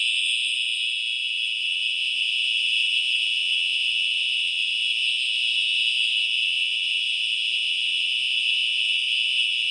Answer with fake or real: fake